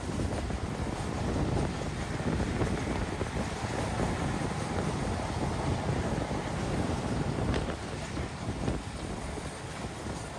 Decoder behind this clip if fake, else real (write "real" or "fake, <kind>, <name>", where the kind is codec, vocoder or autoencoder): real